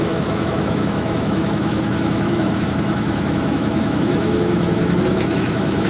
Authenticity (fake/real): fake